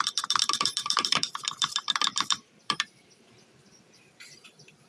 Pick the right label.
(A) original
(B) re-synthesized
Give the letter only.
B